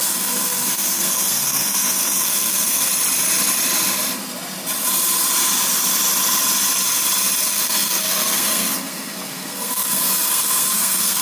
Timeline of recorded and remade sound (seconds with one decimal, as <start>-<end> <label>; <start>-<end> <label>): 0.0-2.9 remade; 2.9-7.5 recorded; 7.5-11.2 remade